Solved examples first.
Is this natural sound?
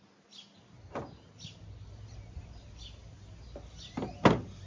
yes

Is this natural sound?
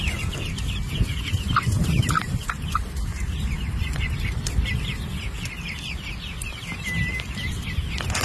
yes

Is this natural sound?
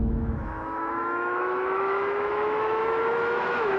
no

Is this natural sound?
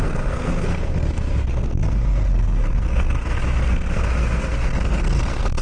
no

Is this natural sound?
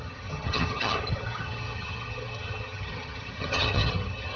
no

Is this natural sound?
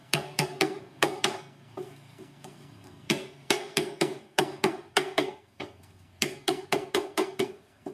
no